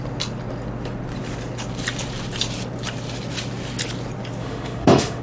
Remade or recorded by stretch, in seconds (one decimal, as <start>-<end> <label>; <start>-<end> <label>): 0.0-4.4 recorded; 4.4-5.2 remade